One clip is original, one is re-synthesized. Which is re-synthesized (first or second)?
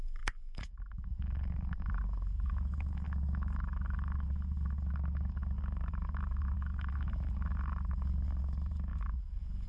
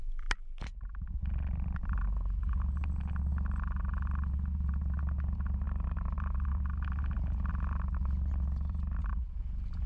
first